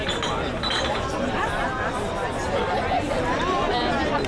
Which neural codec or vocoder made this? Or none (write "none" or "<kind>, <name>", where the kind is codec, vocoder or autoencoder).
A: none